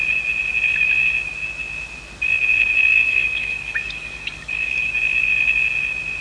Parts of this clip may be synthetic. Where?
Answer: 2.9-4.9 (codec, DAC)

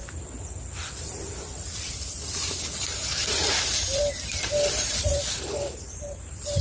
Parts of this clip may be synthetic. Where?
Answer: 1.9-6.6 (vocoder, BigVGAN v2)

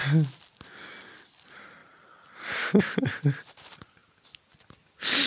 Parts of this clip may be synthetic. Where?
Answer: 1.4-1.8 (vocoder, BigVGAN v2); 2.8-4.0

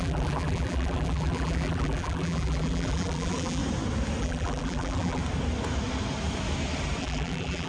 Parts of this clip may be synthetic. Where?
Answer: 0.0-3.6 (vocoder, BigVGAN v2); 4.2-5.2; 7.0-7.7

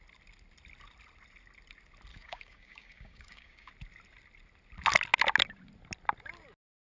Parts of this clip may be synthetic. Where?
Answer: 2.1-3.7 (codec, DAC)